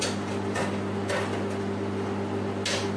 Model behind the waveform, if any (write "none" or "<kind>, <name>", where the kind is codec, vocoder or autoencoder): none